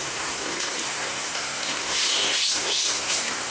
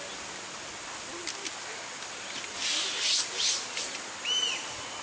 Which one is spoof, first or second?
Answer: first